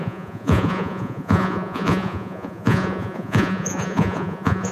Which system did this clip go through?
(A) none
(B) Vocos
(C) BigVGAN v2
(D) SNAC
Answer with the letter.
B